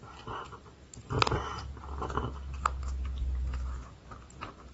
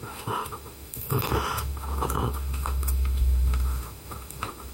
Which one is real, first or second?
first